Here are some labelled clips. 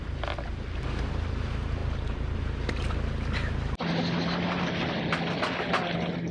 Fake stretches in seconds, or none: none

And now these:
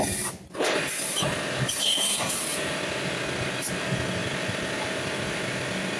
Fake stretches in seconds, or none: 1.8-2.4 (codec, SNAC)

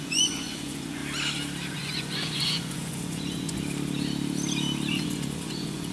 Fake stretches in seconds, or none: 0.0-1.0 (vocoder, Vocos); 1.7-3.6; 4.9-5.9

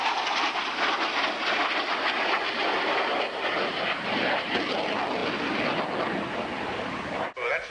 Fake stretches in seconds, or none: none